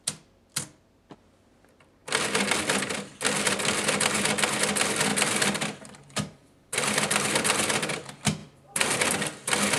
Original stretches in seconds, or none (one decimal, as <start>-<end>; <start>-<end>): 0.0-5.1; 7.4-8.4; 9.2-9.8